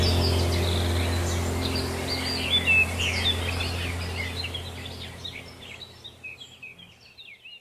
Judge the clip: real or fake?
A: real